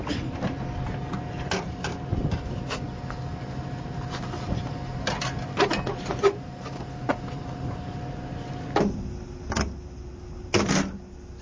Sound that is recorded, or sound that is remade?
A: recorded